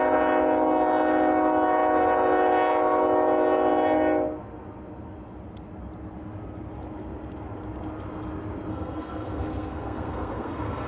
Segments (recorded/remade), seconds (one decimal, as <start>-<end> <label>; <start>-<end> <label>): 0.0-8.7 recorded; 8.7-10.9 remade